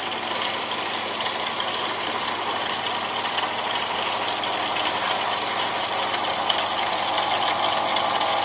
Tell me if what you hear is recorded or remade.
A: recorded